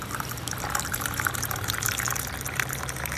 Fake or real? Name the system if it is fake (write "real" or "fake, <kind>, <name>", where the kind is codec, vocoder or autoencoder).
fake, vocoder, BigVGAN v2